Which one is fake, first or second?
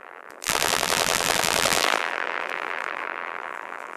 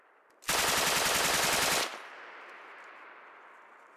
first